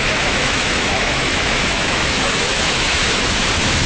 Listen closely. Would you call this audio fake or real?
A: fake